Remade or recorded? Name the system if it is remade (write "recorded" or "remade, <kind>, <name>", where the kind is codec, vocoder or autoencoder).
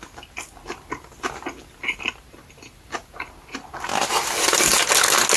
recorded